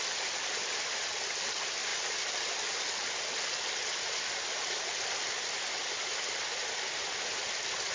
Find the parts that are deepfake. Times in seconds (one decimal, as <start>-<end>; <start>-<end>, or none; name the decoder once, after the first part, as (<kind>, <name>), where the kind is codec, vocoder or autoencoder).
none